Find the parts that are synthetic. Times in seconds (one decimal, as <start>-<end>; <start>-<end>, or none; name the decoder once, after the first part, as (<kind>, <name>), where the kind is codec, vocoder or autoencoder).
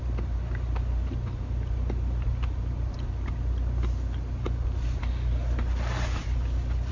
none